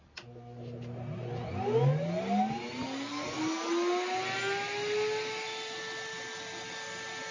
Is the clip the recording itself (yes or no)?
yes